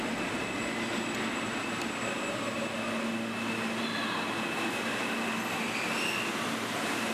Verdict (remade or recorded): recorded